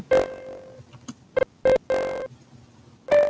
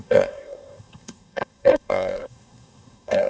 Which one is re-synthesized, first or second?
second